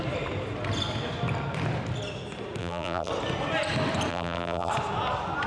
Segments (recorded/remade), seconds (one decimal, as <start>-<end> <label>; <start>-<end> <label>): 0.0-2.6 recorded; 2.6-3.1 remade; 3.1-4.1 recorded; 4.1-4.7 remade; 4.7-5.5 recorded